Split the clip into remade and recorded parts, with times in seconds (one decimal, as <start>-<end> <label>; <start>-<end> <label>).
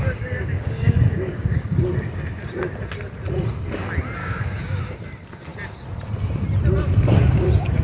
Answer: 0.0-1.7 remade; 1.7-4.2 recorded; 4.2-4.8 remade; 4.8-7.8 recorded